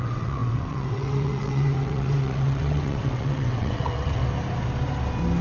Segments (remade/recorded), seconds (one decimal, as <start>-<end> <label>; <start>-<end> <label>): 0.0-4.2 remade; 4.2-5.4 recorded